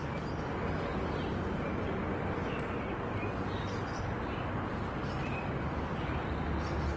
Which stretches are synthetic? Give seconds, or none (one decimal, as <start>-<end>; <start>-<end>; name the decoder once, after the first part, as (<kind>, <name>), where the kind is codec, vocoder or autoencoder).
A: none